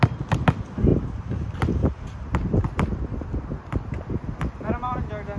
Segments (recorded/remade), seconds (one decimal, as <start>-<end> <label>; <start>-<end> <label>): 0.0-5.4 recorded